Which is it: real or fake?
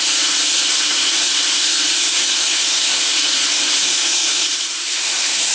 fake